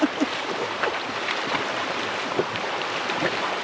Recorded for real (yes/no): yes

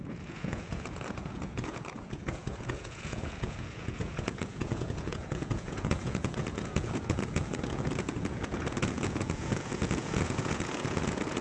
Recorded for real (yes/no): no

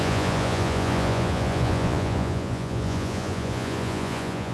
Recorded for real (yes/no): no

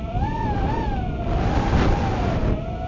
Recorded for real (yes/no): yes